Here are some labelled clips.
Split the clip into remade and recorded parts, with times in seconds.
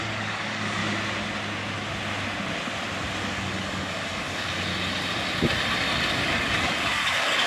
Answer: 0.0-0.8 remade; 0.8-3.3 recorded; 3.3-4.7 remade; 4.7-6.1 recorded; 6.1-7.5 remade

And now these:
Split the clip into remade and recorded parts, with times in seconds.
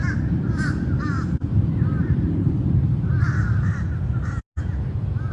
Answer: 0.0-2.9 remade; 2.9-5.3 recorded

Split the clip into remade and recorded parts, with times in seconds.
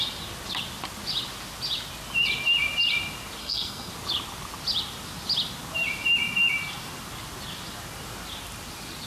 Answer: 0.0-3.4 recorded; 3.4-3.9 remade; 3.9-9.1 recorded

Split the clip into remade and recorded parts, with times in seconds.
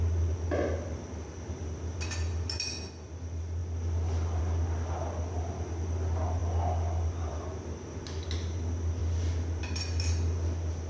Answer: 0.0-10.9 recorded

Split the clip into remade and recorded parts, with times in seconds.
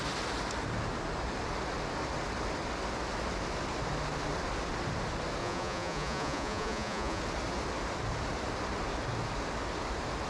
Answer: 0.0-5.4 recorded; 5.4-7.2 remade; 7.2-10.3 recorded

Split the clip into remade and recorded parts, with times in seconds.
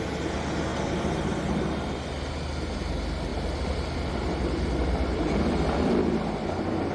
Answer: 0.0-6.9 recorded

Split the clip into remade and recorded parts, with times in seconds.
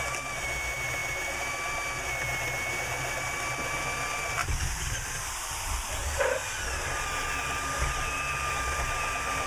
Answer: 0.0-4.4 recorded; 4.4-5.4 remade; 5.4-9.5 recorded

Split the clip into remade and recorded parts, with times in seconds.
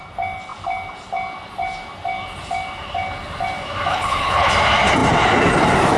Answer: 0.0-3.9 recorded; 3.9-4.5 remade; 4.5-6.0 recorded